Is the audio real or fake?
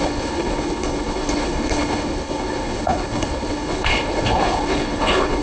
fake